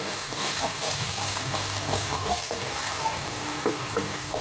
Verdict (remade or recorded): remade